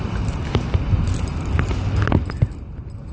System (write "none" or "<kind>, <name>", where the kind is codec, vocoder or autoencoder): none